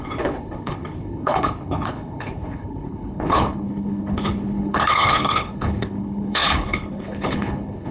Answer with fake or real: fake